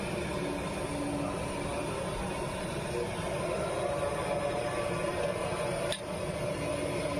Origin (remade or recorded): recorded